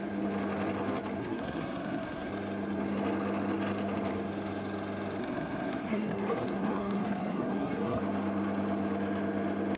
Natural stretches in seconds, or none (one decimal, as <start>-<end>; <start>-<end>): 0.0-1.2; 2.3-5.2; 8.0-9.8